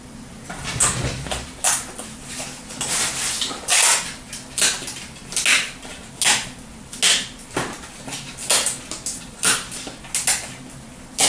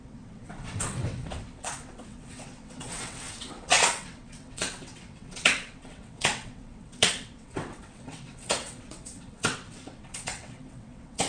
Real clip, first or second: first